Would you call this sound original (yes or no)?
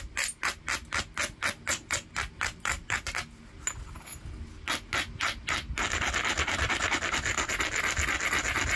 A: yes